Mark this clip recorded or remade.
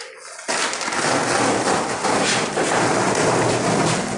recorded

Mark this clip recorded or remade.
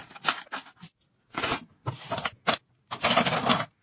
recorded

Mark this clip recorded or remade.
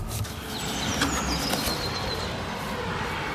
recorded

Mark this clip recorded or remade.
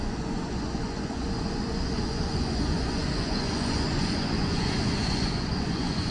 remade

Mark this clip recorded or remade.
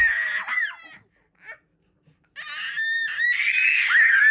recorded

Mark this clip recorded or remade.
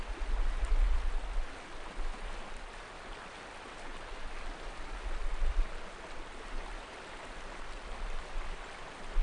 recorded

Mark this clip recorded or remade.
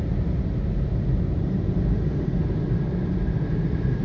recorded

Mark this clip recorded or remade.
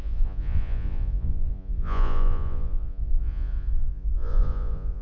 remade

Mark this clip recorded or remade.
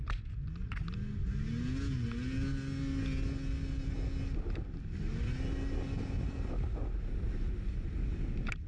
recorded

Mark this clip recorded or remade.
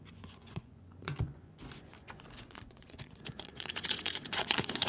remade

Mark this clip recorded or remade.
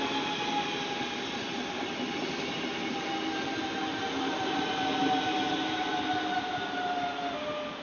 recorded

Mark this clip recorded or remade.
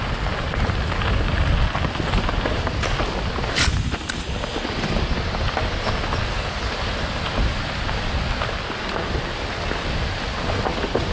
recorded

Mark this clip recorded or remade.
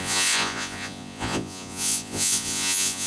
remade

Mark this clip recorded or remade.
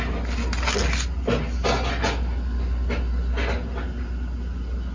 recorded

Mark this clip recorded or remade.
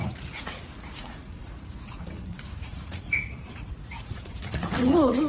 remade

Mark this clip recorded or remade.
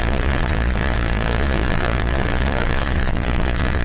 remade